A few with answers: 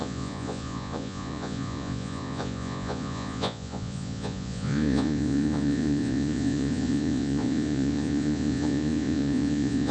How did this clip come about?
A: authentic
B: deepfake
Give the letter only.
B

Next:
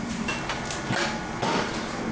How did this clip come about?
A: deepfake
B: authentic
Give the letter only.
B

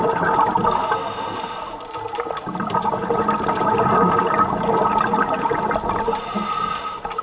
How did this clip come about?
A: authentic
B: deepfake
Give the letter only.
A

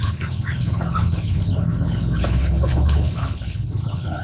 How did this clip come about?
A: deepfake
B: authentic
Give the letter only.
A